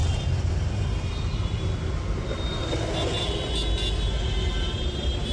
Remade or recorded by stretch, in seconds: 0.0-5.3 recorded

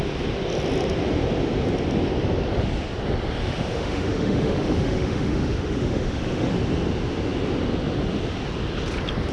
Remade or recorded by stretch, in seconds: 0.0-3.4 recorded; 3.4-6.5 remade; 6.5-9.3 recorded

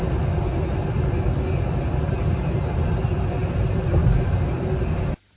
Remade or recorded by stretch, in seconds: 0.0-5.4 recorded

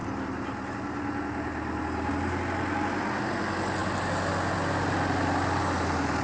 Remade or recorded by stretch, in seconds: 0.0-6.2 recorded

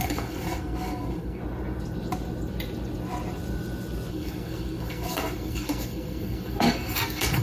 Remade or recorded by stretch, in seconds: 0.0-1.4 remade; 1.4-4.1 recorded; 4.1-7.4 remade

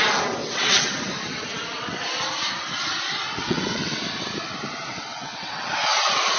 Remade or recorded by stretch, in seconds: 0.0-0.4 recorded; 0.4-0.9 remade; 0.9-3.4 recorded; 3.4-4.0 remade; 4.0-4.9 recorded; 4.9-5.7 remade; 5.7-6.4 recorded

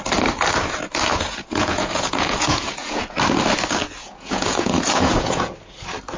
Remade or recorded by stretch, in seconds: 0.0-1.1 recorded; 1.1-3.2 remade; 3.2-4.0 recorded; 4.0-5.5 remade; 5.5-6.2 recorded